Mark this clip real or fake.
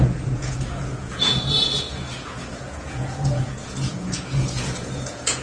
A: fake